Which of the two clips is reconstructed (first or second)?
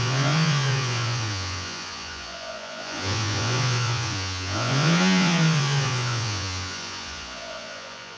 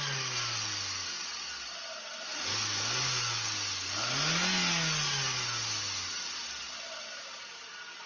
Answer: first